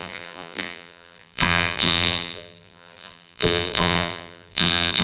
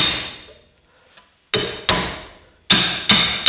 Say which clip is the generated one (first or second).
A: first